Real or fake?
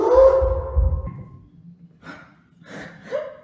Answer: real